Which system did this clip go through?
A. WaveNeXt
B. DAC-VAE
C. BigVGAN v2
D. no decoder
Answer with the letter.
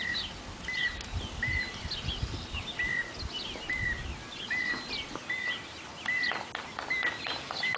D